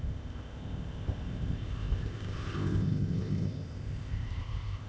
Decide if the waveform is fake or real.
fake